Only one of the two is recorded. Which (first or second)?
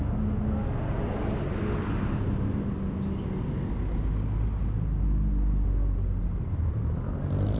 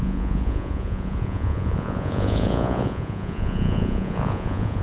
first